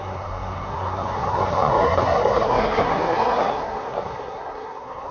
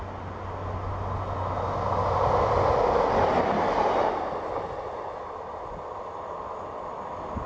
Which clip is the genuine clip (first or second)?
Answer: second